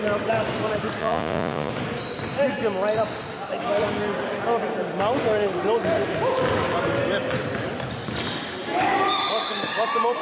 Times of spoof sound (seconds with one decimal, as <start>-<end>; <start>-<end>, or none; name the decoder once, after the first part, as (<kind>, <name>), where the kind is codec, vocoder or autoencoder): 1.0-1.7 (vocoder, Vocos)